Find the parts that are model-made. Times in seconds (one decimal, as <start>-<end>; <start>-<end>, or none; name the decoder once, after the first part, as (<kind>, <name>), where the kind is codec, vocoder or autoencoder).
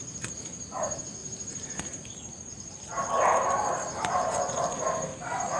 none